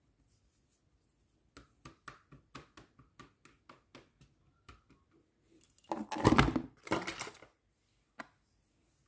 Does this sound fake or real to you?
real